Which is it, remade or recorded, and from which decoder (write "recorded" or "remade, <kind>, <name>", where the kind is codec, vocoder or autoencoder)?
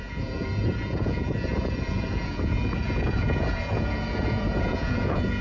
remade, vocoder, Vocos